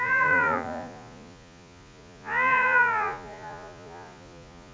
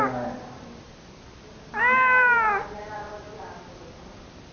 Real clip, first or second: second